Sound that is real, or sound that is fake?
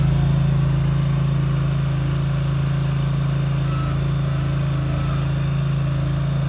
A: real